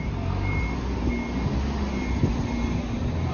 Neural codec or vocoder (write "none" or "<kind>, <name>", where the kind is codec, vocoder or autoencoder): none